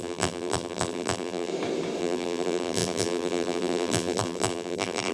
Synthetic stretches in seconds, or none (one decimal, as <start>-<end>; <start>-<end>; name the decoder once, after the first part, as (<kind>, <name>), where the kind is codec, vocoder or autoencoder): 0.0-1.5 (vocoder, BigVGAN v2); 2.0-5.1

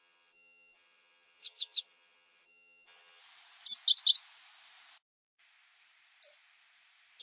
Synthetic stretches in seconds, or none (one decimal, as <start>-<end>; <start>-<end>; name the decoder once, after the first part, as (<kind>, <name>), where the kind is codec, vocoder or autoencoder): 0.0-3.2 (vocoder, HiFi-GAN)

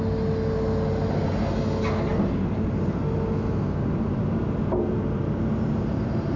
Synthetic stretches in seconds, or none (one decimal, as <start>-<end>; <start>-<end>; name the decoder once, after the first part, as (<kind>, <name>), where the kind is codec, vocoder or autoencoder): none

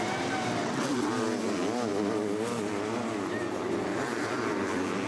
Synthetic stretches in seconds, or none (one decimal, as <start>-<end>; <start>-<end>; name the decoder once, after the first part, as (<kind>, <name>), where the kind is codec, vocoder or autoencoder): 0.6-1.1 (vocoder, WaveNeXt)

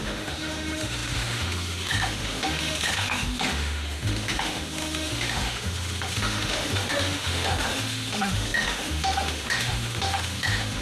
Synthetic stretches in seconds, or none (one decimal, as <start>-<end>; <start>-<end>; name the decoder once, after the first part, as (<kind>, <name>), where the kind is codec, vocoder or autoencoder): 0.0-10.8 (autoencoder, DAC-VAE)

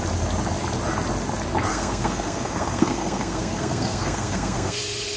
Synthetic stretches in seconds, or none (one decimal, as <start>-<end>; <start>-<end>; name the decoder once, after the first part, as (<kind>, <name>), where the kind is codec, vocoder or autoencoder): 1.7-4.8 (codec, SNAC)

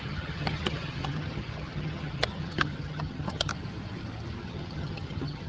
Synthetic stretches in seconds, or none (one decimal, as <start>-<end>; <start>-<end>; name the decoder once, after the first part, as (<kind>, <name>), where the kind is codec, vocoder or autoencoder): 0.0-3.5 (vocoder, HiFi-GAN); 4.4-5.5

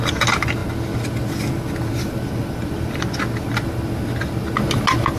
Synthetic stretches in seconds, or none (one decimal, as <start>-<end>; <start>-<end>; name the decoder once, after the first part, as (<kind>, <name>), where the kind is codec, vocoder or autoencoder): none